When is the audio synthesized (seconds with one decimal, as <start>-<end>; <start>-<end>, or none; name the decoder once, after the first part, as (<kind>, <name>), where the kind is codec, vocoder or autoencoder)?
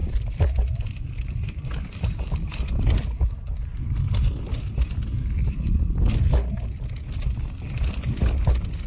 0.0-3.6 (vocoder, BigVGAN v2)